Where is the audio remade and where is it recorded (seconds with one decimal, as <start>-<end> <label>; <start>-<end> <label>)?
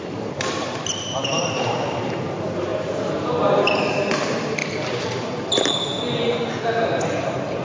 0.0-6.4 remade; 6.4-7.1 recorded; 7.1-7.6 remade